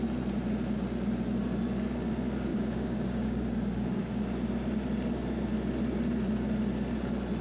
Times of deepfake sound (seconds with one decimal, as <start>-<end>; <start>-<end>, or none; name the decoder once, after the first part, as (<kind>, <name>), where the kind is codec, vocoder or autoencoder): 2.5-4.2 (codec, DAC)